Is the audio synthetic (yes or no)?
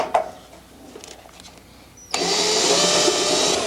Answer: no